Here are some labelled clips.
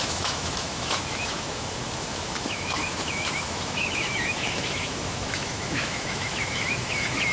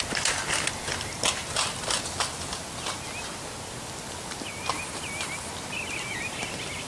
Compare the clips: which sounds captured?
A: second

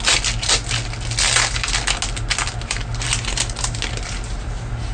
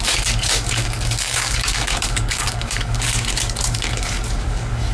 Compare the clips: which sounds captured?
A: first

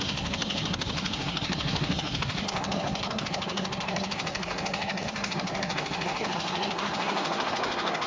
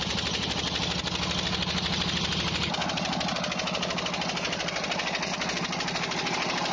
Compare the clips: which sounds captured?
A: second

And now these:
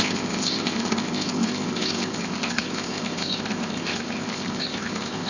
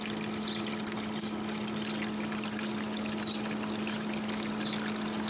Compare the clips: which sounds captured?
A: second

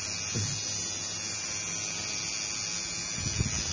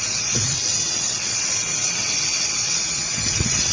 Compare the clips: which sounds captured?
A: first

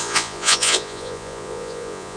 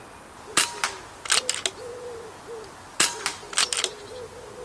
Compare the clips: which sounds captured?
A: second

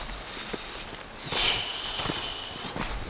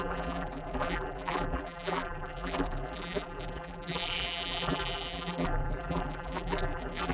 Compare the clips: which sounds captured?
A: first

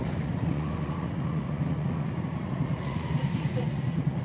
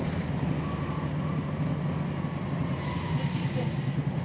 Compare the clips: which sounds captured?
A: second